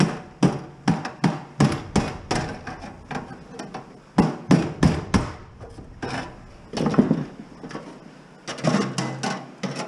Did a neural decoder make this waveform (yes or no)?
no